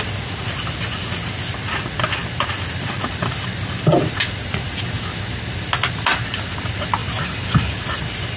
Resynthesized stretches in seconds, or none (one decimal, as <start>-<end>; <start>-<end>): none